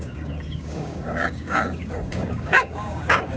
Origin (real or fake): fake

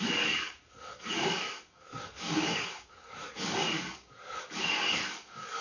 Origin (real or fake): fake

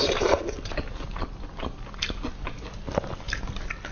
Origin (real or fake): real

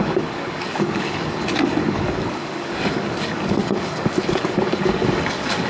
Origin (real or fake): fake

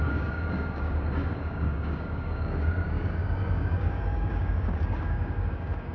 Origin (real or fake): fake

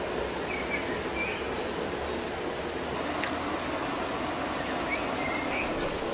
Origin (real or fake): real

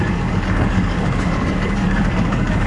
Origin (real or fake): fake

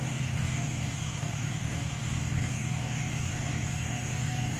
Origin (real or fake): fake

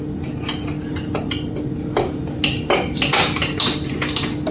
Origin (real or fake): real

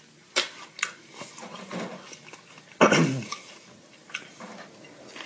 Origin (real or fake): real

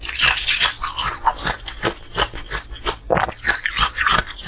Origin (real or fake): real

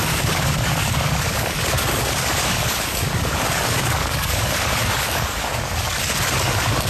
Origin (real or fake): fake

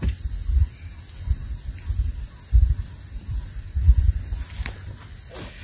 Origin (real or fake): real